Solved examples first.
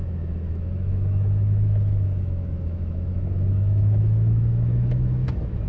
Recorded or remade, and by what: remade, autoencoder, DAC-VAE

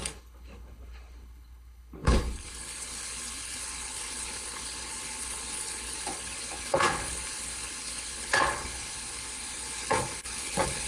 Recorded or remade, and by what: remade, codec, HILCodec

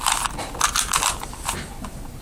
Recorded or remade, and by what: recorded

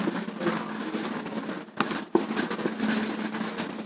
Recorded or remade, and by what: recorded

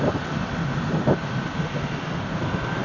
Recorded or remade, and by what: recorded